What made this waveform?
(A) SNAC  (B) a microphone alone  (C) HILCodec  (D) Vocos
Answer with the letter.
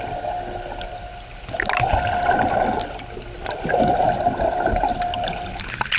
B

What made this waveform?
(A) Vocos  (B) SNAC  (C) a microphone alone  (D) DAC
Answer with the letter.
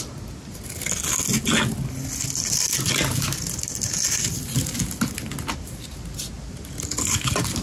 C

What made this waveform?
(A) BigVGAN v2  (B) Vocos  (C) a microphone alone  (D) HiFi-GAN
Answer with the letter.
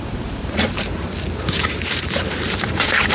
A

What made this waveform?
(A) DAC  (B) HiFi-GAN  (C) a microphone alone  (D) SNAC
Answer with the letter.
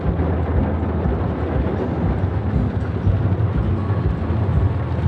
C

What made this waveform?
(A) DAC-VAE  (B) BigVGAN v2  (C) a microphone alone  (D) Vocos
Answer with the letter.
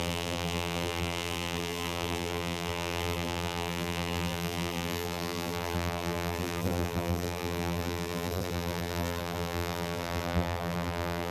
B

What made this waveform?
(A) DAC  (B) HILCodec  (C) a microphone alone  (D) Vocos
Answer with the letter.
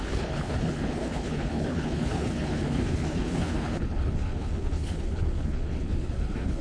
B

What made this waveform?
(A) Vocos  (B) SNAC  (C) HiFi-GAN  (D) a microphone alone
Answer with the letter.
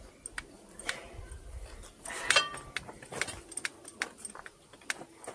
D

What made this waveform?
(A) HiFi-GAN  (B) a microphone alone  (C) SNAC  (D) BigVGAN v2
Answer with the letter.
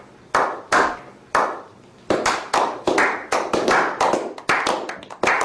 B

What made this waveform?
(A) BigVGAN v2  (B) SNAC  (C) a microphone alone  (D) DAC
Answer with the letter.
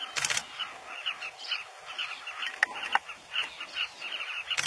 C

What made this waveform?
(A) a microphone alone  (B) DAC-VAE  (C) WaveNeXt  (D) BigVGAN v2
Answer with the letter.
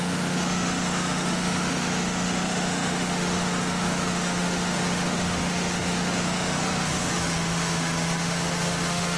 B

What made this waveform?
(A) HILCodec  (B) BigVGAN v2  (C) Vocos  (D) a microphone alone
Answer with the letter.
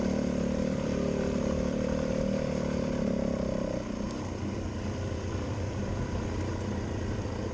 B